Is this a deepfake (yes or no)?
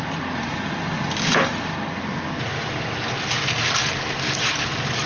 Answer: no